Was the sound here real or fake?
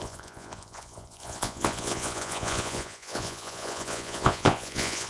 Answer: fake